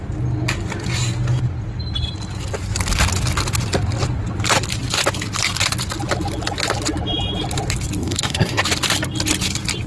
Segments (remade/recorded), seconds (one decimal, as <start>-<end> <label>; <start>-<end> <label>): 0.0-8.0 recorded; 8.0-8.6 remade; 8.6-9.9 recorded